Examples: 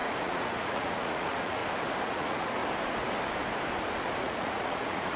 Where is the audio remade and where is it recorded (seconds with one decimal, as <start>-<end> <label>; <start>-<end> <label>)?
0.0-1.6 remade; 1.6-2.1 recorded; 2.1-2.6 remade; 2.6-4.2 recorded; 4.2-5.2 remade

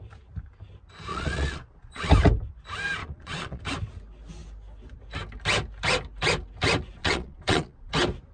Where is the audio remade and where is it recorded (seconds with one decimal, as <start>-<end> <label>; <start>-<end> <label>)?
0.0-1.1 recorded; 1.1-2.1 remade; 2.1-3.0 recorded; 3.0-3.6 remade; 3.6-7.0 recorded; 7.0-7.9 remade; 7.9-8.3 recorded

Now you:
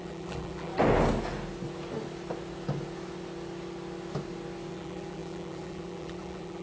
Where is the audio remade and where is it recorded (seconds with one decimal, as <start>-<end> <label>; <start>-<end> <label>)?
0.0-0.7 remade; 0.7-4.7 recorded; 4.7-6.6 remade